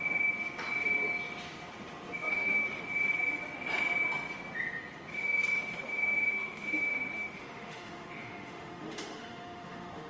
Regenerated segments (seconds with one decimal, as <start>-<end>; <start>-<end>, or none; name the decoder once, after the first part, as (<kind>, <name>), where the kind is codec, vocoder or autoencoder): 2.2-2.8 (autoencoder, DAC-VAE); 5.1-10.1